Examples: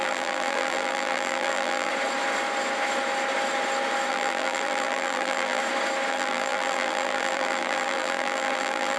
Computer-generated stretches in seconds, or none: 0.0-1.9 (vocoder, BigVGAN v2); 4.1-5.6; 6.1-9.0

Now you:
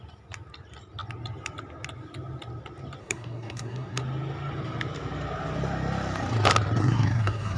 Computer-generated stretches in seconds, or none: 3.0-4.0 (codec, SNAC); 6.8-7.6

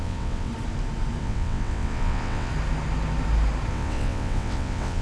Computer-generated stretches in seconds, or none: 0.0-0.5 (vocoder, WaveNeXt); 1.2-2.5; 3.7-5.0

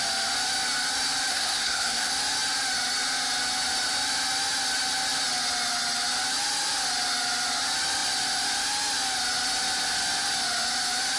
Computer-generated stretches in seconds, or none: 1.3-2.1 (codec, SNAC)

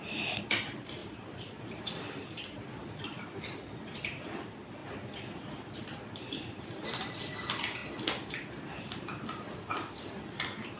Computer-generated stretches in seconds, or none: 0.0-4.8 (vocoder, BigVGAN v2); 5.4-7.8; 8.8-10.8

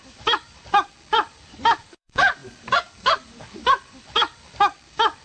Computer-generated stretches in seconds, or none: 0.0-5.2 (codec, DAC)

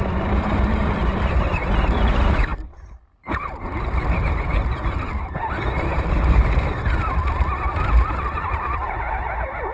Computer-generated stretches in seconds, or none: 0.0-9.7 (vocoder, BigVGAN v2)

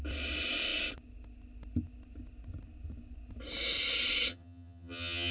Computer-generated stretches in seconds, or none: 4.3-5.3 (vocoder, HiFi-GAN)